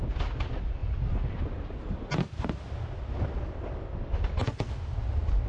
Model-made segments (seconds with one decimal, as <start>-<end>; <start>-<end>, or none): 0.8-1.4